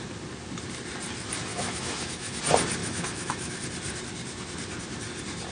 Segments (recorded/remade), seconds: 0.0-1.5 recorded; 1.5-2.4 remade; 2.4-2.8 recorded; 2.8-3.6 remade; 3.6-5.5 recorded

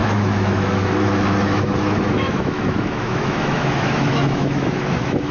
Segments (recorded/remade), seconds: 0.0-5.3 remade